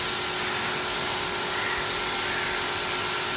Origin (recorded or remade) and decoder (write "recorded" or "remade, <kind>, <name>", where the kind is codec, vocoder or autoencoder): recorded